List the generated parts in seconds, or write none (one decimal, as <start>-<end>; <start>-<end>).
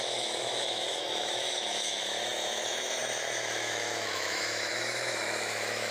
0.0-5.9